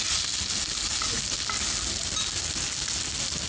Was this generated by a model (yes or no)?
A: no